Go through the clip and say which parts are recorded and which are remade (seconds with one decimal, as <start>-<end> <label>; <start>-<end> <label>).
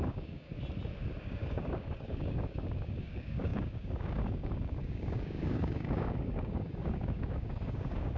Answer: 0.0-0.5 remade; 0.5-1.2 recorded; 1.2-8.2 remade